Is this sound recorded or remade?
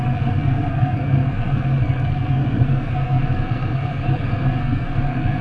remade